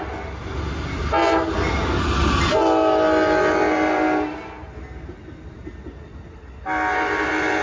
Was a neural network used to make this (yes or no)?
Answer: no